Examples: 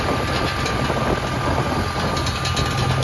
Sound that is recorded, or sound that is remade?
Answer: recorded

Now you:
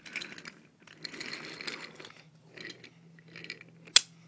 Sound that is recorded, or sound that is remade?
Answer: recorded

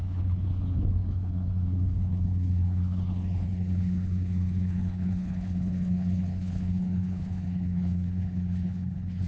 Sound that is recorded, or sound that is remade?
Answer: remade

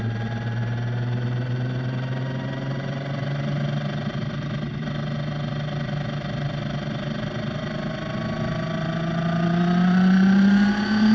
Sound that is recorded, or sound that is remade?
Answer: recorded